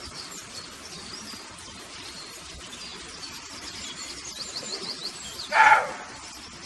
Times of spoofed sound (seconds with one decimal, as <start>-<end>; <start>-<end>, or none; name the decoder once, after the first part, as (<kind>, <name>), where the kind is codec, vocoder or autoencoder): none